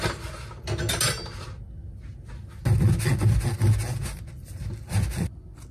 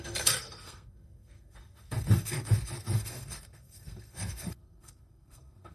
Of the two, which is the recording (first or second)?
first